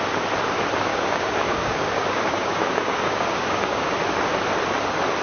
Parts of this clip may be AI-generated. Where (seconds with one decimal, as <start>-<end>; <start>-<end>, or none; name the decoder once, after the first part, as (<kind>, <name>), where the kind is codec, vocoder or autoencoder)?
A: 0.9-4.0 (codec, DAC)